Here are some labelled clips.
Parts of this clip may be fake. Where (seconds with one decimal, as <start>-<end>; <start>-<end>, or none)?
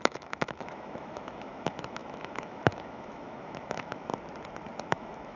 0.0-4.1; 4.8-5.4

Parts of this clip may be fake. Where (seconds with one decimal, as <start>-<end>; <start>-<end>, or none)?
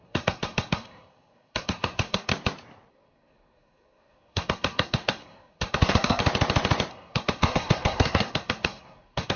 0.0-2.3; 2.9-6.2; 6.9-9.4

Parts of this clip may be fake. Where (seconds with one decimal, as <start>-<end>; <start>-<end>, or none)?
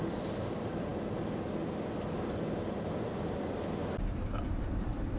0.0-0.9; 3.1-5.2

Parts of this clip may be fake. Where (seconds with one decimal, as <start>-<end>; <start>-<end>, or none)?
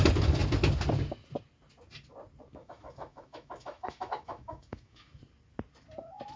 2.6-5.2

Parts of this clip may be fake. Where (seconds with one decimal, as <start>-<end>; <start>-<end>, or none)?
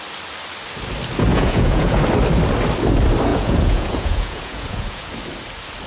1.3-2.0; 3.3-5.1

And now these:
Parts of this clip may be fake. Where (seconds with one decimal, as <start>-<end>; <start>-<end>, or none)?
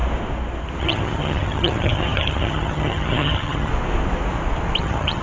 0.8-3.7; 4.8-5.2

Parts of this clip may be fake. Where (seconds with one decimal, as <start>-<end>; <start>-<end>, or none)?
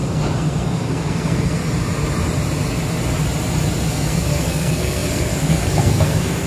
0.0-1.6; 3.9-6.5